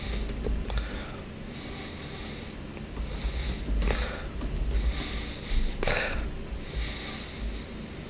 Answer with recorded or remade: recorded